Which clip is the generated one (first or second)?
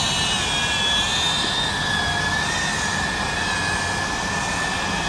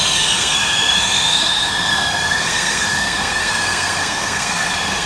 second